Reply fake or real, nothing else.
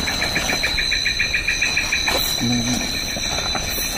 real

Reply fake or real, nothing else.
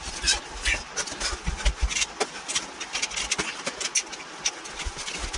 real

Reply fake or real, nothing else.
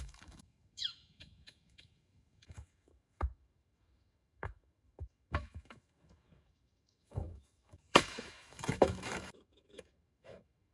fake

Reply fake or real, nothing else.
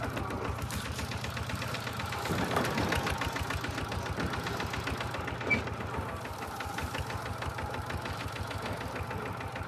real